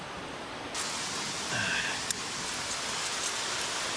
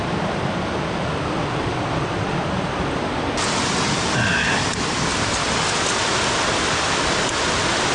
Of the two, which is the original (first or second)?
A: first